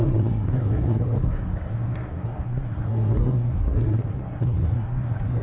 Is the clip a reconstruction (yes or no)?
yes